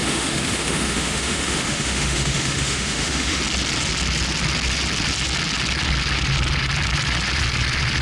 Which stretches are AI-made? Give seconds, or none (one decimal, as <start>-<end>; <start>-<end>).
0.0-3.4